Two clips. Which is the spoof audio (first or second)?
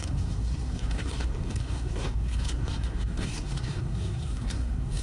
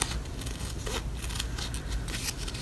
first